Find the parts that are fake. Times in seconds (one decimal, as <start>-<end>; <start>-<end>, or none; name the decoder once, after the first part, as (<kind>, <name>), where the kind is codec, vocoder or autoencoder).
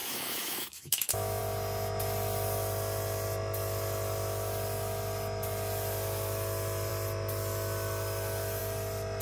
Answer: 0.0-1.4 (autoencoder, DAC-VAE)